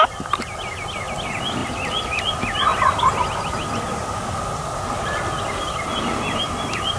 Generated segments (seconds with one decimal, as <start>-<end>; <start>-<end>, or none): 1.6-2.2; 2.7-7.0

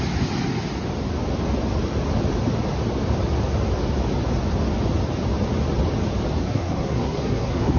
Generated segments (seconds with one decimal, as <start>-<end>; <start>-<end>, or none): 6.4-7.8

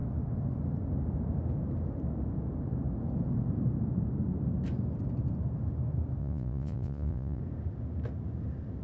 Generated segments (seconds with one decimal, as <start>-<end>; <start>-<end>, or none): 6.2-7.4